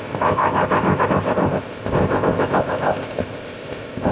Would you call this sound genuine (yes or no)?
no